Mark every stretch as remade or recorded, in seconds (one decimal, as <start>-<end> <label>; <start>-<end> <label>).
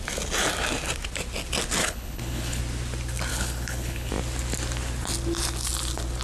0.0-1.8 recorded; 1.8-2.6 remade; 2.6-3.3 recorded; 3.3-4.1 remade; 4.1-6.2 recorded